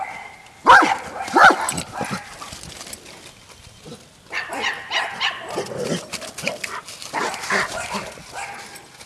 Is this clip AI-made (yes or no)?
no